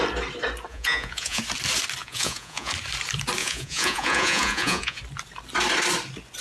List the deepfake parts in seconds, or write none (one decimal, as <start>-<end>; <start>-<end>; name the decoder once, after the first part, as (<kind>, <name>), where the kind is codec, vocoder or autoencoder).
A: 0.7-1.4 (vocoder, Vocos); 2.0-2.7; 3.4-5.0